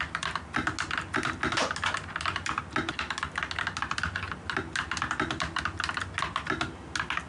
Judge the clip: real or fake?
real